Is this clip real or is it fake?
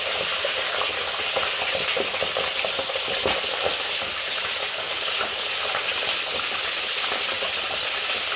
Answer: fake